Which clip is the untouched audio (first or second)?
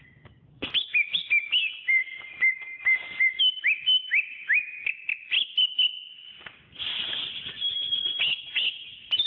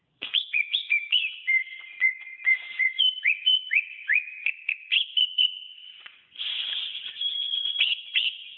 first